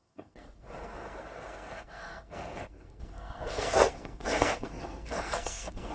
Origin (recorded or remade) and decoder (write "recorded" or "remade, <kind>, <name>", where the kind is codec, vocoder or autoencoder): remade, codec, SNAC